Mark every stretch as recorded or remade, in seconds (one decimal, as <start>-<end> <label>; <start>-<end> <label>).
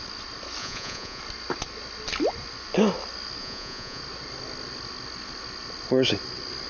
0.0-0.6 recorded; 0.6-1.2 remade; 1.2-3.4 recorded; 3.4-4.0 remade; 4.0-6.7 recorded